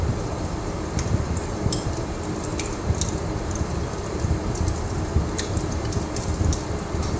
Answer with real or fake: real